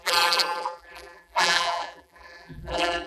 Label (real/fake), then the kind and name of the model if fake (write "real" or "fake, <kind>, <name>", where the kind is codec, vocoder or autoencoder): fake, vocoder, BigVGAN v2